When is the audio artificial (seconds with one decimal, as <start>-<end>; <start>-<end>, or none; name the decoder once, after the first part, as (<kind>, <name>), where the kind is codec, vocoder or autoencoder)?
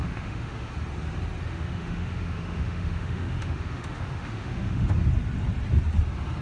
0.0-0.7 (autoencoder, DAC-VAE); 1.5-4.9